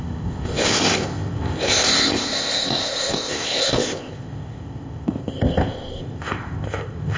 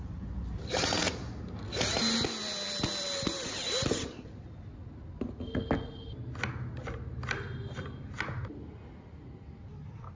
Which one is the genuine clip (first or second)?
second